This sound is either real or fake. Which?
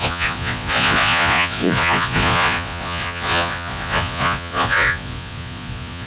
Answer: fake